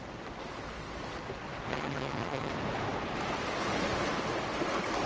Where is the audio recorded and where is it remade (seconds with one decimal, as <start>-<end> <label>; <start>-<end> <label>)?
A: 0.0-1.7 recorded; 1.7-2.5 remade; 2.5-5.1 recorded